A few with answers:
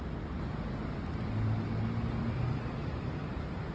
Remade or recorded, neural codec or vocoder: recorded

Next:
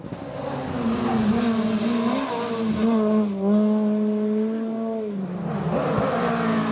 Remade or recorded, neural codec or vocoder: recorded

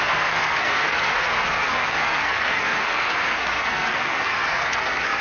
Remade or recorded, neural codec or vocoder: remade, codec, SNAC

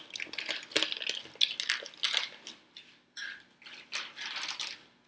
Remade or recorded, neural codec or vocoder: recorded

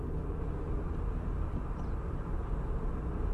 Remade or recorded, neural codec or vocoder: recorded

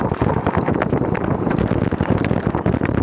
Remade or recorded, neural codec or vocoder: recorded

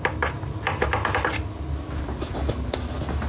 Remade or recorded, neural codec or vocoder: recorded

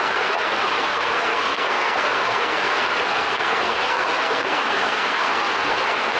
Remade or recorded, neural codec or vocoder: remade, codec, SNAC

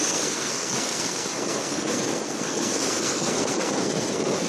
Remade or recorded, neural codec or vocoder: remade, codec, SNAC